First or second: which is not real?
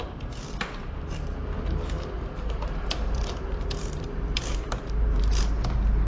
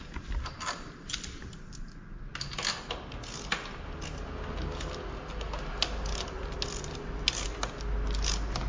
first